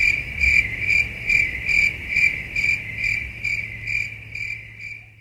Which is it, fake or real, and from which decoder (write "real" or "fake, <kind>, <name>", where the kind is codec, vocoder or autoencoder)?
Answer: real